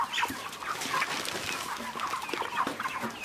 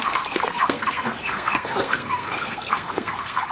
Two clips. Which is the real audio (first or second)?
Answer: first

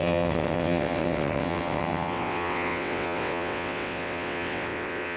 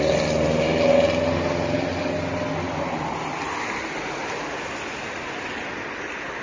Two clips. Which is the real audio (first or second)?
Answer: second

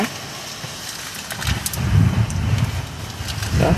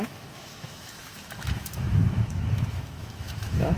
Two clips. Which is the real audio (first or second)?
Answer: first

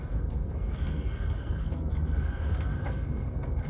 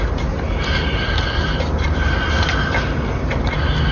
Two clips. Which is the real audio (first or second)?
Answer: second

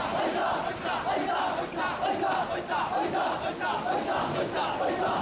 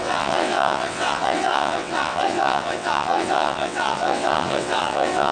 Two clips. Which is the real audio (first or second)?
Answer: first